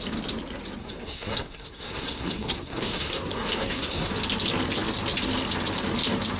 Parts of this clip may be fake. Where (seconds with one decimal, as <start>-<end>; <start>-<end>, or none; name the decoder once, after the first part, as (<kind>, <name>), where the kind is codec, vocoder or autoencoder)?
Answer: 0.8-4.1 (codec, SNAC)